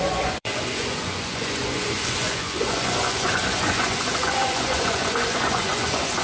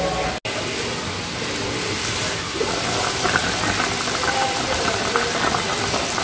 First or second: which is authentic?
second